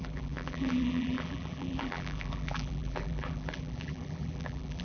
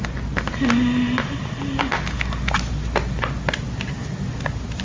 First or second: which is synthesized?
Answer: first